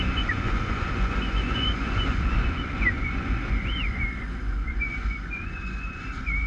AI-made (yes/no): yes